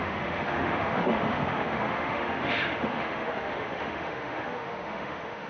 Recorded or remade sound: remade